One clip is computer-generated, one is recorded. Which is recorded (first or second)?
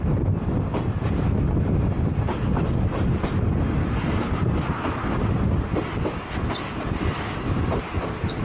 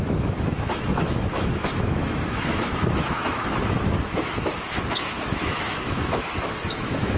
first